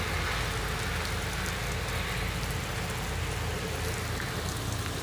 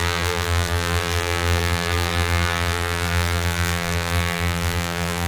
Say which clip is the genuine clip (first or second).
first